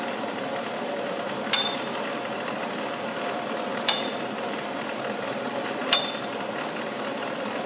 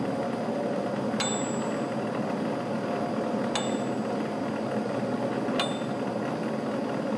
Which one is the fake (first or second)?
first